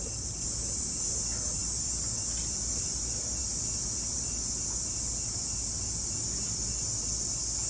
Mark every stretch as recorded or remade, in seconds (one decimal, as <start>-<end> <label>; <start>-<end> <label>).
0.0-7.7 recorded